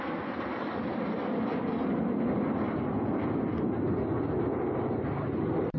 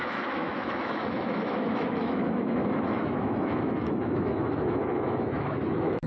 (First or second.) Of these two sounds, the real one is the first